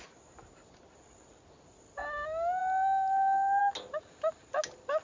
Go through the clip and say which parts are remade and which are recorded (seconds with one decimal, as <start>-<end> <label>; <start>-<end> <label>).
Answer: 0.0-5.0 recorded